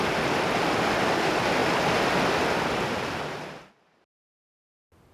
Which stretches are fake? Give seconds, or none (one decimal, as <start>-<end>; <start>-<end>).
none